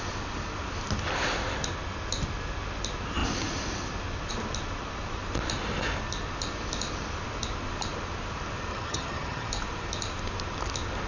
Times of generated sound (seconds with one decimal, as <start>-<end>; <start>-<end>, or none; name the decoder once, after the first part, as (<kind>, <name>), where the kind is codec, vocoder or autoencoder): 8.7-9.5 (vocoder, HiFi-GAN)

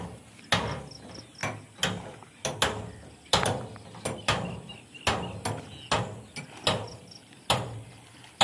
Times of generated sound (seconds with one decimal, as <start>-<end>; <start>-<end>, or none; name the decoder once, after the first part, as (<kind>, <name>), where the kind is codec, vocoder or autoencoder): none

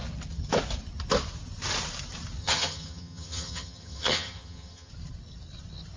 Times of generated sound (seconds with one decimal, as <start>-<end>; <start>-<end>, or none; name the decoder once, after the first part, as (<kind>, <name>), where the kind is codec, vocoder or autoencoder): 2.4-4.9 (vocoder, HiFi-GAN)

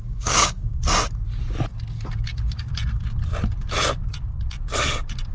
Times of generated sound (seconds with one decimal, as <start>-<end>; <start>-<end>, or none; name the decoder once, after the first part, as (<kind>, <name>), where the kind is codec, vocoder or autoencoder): 0.0-0.8 (codec, DAC)

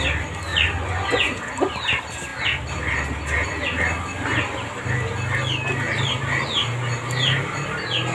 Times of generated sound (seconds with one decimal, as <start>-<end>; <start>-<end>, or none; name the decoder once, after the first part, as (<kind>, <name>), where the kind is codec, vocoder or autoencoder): 0.5-1.5 (vocoder, Vocos)

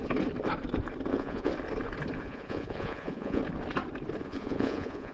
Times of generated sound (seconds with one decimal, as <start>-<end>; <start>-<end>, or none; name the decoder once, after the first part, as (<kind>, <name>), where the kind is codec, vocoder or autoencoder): 1.1-1.5 (vocoder, Vocos); 2.2-3.4; 4.2-5.1